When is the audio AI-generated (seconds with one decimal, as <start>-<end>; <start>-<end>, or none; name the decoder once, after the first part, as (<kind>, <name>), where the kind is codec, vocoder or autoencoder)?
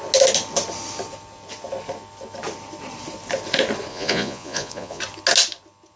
3.9-5.0 (vocoder, Vocos)